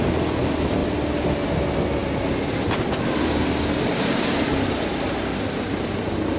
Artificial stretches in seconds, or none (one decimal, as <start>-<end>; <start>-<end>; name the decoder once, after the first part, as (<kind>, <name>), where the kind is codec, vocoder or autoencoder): none